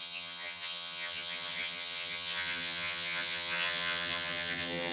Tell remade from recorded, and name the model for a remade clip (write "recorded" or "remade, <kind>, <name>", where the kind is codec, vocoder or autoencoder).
remade, vocoder, HiFi-GAN